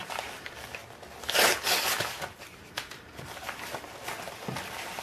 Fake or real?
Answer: real